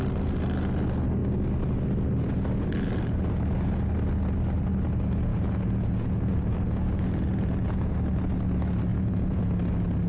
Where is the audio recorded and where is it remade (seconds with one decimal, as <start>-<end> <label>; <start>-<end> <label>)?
0.0-5.3 recorded; 5.3-7.9 remade; 7.9-8.9 recorded; 8.9-9.4 remade; 9.4-10.1 recorded